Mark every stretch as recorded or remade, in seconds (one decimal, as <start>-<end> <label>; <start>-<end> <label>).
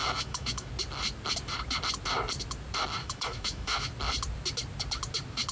0.0-0.7 remade; 0.7-3.0 recorded; 3.0-3.9 remade; 3.9-5.5 recorded